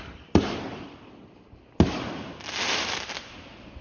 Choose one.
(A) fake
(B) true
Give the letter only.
B